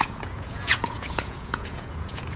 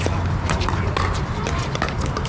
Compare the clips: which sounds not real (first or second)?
first